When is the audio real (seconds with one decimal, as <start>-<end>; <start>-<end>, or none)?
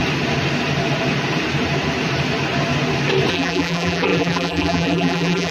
0.0-3.3